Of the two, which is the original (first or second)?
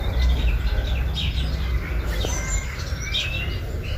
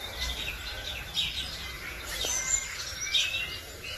first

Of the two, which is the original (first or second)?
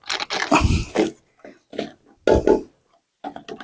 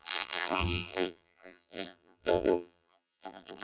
first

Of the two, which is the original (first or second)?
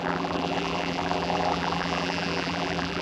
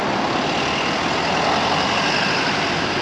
second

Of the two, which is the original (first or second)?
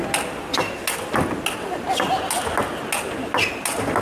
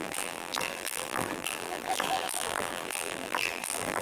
first